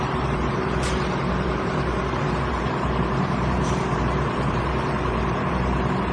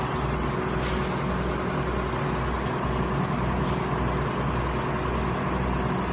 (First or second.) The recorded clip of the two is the second